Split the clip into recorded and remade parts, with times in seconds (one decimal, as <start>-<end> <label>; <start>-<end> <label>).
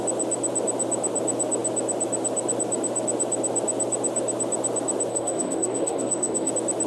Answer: 0.0-5.1 recorded; 5.1-6.5 remade; 6.5-6.9 recorded